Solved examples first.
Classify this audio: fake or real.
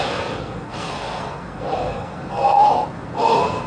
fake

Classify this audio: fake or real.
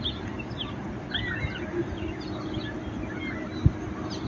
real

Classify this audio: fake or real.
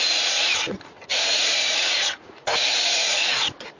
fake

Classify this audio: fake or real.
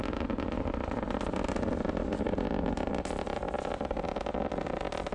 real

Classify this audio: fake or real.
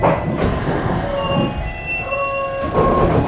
real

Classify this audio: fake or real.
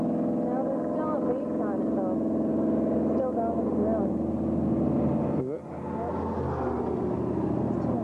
real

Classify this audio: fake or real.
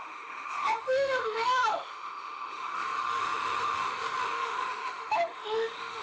fake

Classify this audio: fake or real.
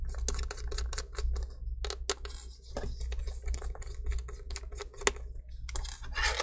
real